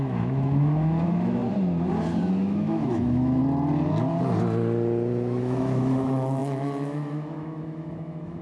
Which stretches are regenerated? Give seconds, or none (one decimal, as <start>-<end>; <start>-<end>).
0.0-1.4; 2.2-3.4; 5.4-8.4